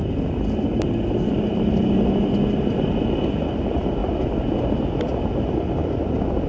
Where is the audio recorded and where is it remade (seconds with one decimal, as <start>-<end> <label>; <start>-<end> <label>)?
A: 0.0-6.5 recorded